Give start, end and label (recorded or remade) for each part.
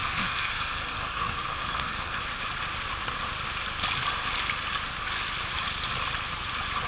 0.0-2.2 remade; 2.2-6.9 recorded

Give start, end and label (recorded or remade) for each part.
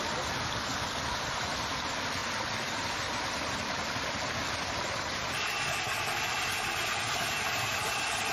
0.0-8.3 recorded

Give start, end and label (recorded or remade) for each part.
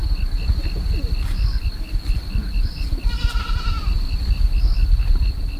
0.0-1.6 recorded; 1.6-4.8 remade; 4.8-5.6 recorded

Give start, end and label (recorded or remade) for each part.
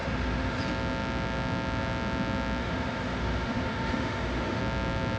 0.0-0.6 remade; 0.6-2.6 recorded; 2.6-4.6 remade; 4.6-5.2 recorded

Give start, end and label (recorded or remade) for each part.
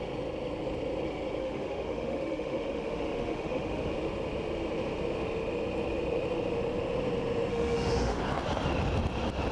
0.0-1.4 recorded; 1.4-3.9 remade; 3.9-7.5 recorded; 7.5-8.2 remade; 8.2-9.5 recorded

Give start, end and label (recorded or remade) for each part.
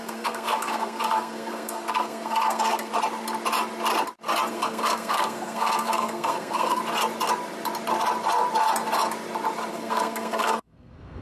0.0-2.9 remade; 2.9-4.5 recorded; 4.5-6.8 remade; 6.8-9.7 recorded; 9.7-11.2 remade